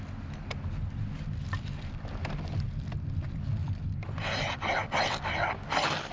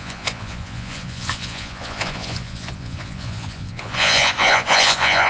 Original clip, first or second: first